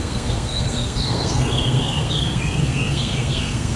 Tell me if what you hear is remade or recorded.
remade